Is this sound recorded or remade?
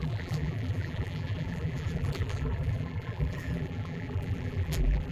remade